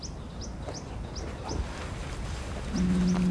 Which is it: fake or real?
real